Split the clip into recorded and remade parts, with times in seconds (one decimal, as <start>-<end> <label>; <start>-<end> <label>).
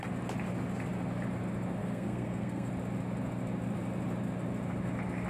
0.0-1.8 recorded; 1.8-2.7 remade; 2.7-5.3 recorded